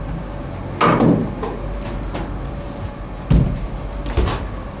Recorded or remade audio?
recorded